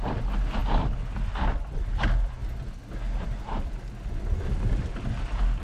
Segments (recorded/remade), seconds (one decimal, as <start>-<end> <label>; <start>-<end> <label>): 0.0-5.6 recorded